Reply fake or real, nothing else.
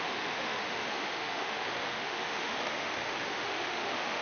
fake